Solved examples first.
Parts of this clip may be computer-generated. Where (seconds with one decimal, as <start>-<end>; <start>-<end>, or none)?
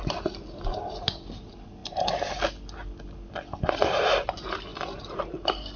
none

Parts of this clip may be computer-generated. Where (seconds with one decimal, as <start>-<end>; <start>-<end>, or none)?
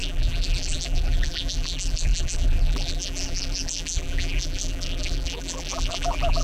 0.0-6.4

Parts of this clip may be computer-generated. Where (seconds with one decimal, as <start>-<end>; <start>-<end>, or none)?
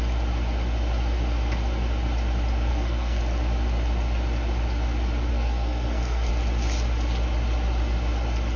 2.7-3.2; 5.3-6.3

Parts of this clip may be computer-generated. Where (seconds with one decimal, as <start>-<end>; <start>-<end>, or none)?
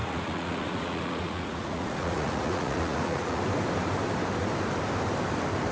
0.0-3.4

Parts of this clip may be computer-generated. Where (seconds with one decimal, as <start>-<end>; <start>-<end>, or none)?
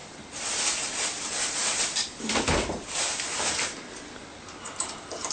1.2-5.3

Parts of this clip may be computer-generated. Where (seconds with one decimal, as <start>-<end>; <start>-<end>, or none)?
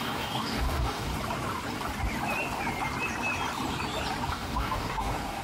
0.0-1.1; 4.3-5.4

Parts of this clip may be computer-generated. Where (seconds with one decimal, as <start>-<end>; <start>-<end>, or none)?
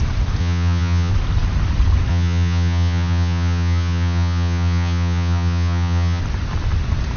0.4-1.1; 2.1-6.2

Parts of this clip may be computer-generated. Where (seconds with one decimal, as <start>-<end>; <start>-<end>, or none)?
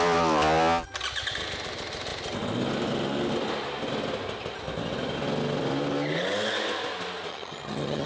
7.3-8.1